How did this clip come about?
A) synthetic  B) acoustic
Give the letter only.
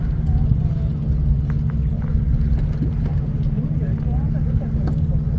B